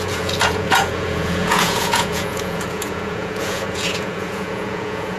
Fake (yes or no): yes